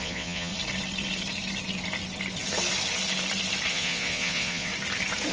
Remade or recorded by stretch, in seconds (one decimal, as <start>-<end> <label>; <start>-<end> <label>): 0.0-0.5 remade; 0.5-3.7 recorded; 3.7-4.7 remade; 4.7-5.3 recorded